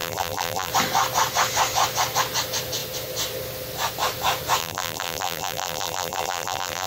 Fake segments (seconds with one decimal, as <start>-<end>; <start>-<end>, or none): 0.0-0.7; 4.6-6.9